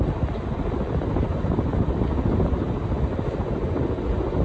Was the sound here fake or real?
real